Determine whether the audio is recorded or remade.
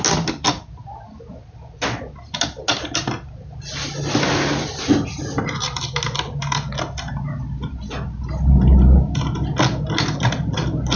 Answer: recorded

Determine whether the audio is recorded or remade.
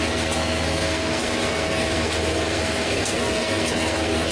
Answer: remade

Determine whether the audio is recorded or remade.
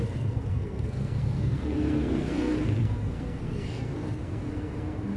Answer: remade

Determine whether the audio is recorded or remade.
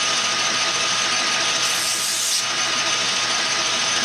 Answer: recorded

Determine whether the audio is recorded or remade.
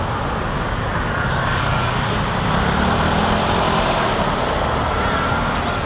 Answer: recorded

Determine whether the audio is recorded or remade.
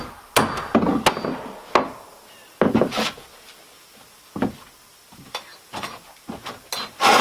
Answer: recorded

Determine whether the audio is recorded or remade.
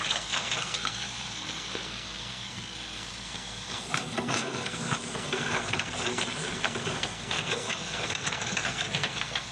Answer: remade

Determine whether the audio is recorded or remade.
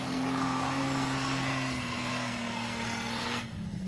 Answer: remade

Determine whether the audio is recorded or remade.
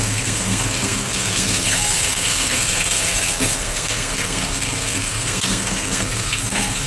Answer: remade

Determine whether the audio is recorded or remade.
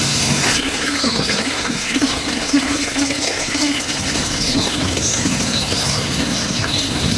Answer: remade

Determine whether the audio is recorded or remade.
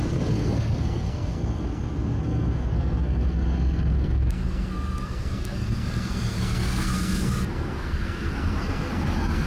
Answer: remade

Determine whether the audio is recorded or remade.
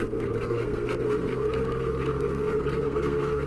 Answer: remade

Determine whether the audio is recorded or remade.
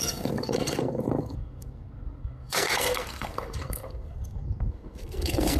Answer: remade